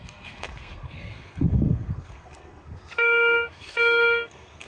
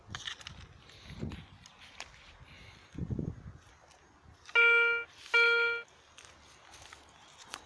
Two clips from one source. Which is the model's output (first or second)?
first